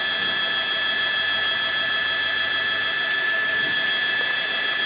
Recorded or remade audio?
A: recorded